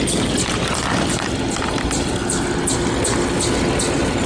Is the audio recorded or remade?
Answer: recorded